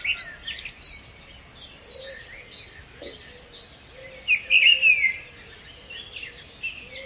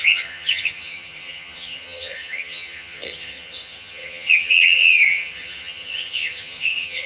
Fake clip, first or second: second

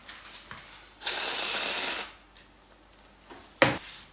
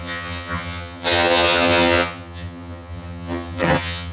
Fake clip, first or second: second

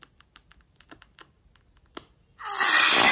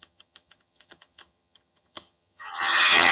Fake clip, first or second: second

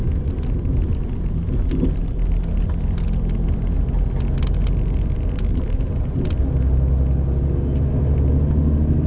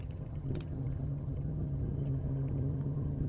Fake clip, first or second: second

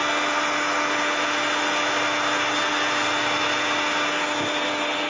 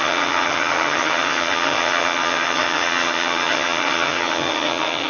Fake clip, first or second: second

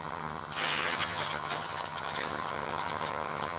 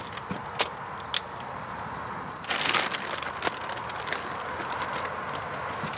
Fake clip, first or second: first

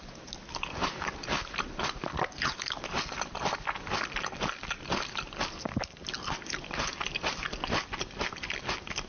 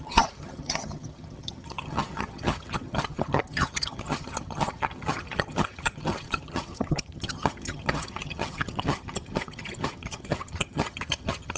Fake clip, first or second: second